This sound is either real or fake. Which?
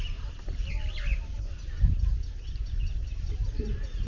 real